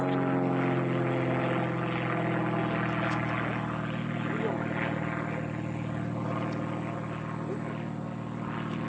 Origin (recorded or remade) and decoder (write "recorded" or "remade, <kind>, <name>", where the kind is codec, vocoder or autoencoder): recorded